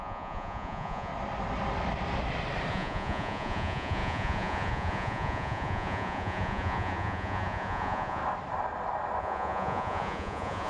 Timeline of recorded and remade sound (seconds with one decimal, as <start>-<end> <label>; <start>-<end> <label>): 0.0-1.1 remade; 1.1-2.7 recorded; 2.7-8.2 remade; 8.2-9.2 recorded; 9.2-10.7 remade